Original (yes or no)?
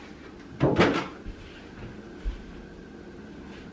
yes